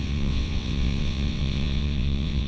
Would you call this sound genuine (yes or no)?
no